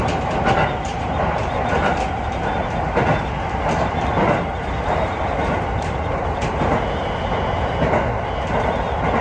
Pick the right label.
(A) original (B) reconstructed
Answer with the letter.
A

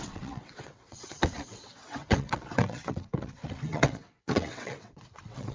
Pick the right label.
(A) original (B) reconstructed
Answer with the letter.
B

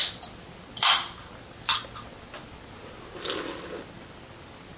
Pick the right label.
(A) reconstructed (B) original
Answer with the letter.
B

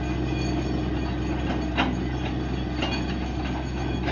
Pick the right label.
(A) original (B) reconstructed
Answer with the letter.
A